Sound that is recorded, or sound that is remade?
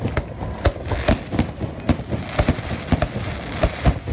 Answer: recorded